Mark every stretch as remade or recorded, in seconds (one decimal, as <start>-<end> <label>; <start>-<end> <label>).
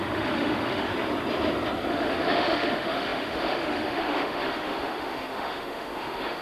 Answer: 0.0-0.9 remade; 0.9-1.9 recorded; 1.9-6.4 remade